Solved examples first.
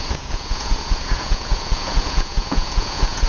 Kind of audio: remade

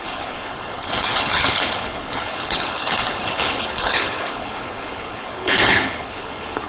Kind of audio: remade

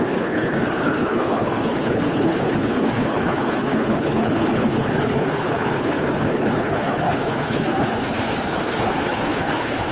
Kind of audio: remade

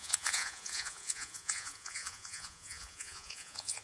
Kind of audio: remade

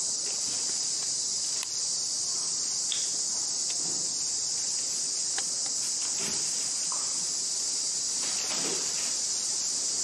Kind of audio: recorded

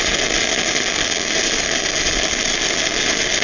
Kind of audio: recorded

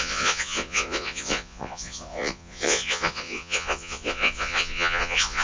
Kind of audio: remade